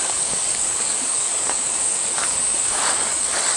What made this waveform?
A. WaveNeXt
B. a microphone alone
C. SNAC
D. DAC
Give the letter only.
D